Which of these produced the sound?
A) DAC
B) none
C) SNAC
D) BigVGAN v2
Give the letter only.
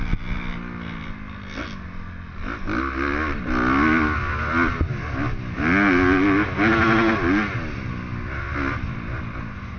B